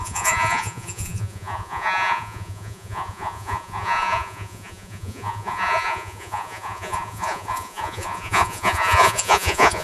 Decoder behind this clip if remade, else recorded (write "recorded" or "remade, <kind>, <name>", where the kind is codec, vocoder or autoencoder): remade, vocoder, Vocos